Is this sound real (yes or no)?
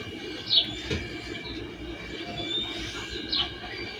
yes